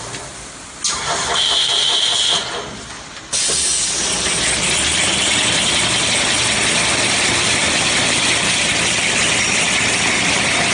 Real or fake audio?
real